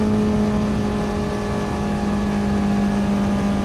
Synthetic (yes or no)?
no